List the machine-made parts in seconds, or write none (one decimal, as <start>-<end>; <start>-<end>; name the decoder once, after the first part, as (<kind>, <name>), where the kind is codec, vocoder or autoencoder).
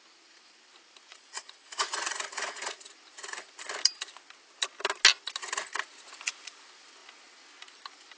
1.1-2.9 (vocoder, Vocos)